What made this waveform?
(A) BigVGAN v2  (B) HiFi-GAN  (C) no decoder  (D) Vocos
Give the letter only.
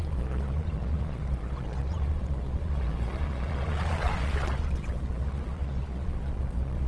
D